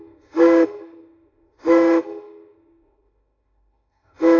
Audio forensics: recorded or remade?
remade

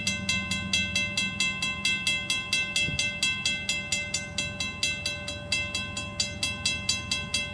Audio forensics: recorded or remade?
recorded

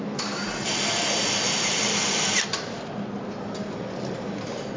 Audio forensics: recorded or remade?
recorded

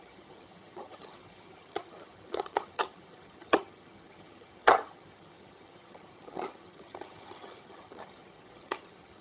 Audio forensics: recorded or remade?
remade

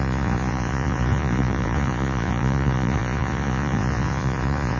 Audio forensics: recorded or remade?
remade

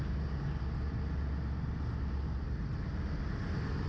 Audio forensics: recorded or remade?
recorded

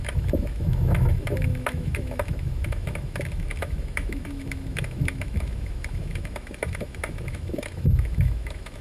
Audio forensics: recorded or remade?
remade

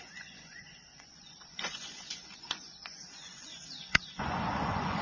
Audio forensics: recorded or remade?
remade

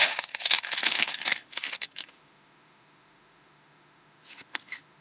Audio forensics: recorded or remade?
remade